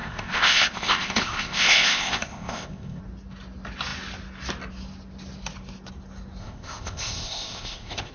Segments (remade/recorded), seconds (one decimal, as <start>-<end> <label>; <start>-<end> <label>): 0.0-3.0 remade; 3.0-6.4 recorded; 6.4-8.1 remade